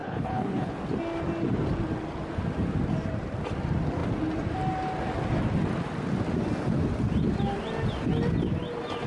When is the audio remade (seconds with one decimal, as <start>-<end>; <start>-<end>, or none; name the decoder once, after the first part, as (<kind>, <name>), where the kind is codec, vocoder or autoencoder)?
0.0-0.7 (codec, HILCodec)